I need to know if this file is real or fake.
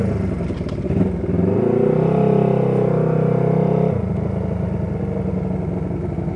real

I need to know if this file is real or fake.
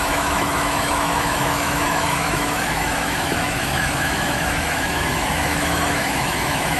fake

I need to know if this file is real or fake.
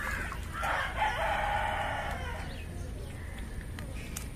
real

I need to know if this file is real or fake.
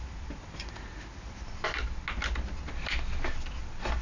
real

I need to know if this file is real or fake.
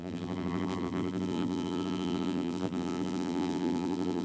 fake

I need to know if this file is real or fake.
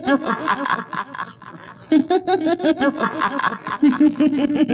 fake